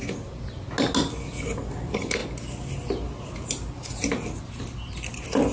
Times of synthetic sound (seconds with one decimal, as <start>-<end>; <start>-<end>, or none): none